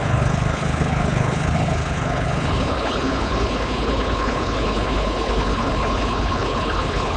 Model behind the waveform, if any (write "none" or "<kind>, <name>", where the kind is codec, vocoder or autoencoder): codec, HILCodec